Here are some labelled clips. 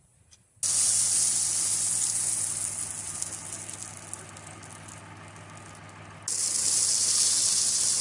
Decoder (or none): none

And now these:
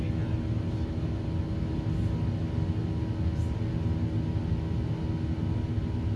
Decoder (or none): none